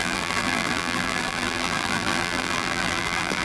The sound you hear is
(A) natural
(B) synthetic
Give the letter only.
B